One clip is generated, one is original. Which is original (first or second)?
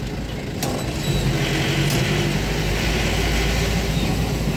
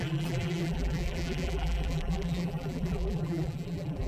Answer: first